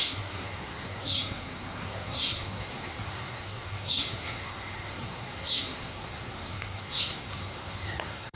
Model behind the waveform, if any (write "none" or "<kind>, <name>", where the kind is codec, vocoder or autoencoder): codec, SNAC